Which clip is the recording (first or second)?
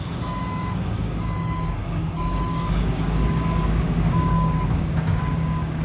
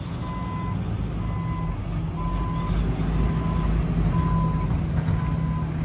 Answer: second